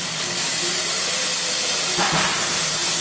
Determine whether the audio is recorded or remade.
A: remade